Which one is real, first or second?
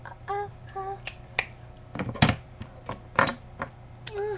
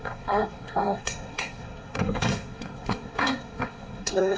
first